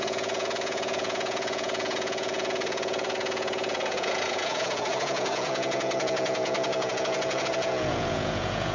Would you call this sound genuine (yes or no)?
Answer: no